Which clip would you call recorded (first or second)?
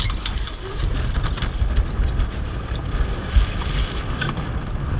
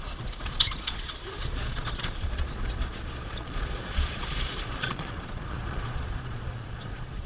first